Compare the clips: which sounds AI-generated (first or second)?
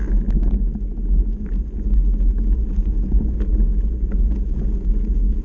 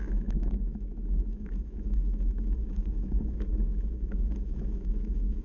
second